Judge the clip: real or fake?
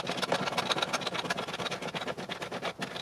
real